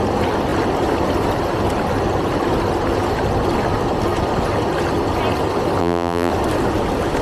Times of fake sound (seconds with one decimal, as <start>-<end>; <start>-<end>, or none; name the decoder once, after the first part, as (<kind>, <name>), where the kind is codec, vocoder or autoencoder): 5.8-6.3 (vocoder, BigVGAN v2)